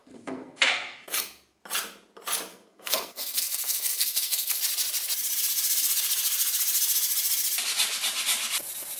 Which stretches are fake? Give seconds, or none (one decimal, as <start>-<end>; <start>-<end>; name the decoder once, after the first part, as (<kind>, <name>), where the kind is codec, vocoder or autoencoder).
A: 0.0-1.6 (codec, SNAC); 2.5-4.6